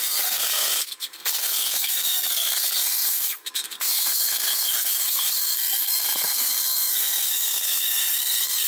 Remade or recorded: remade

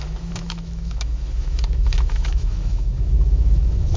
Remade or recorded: remade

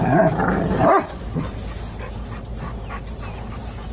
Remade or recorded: recorded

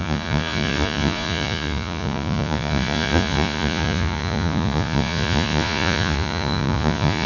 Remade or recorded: remade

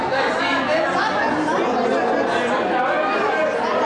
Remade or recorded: recorded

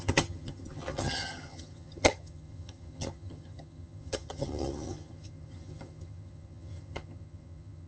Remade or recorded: remade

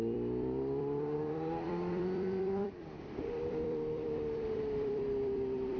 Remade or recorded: remade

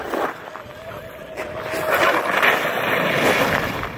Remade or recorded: recorded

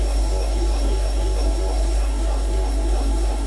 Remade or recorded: remade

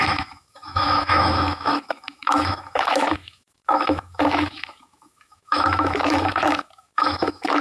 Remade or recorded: remade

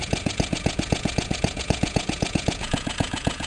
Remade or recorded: remade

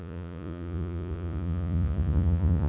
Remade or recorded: remade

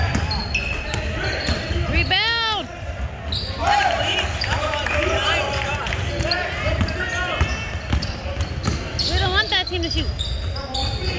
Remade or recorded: recorded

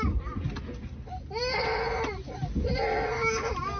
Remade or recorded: recorded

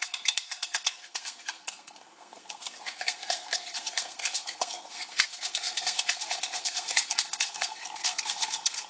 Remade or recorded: remade